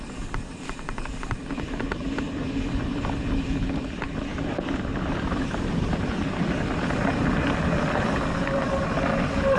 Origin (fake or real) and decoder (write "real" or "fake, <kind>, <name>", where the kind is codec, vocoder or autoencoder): fake, vocoder, BigVGAN v2